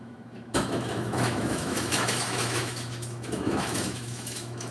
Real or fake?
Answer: fake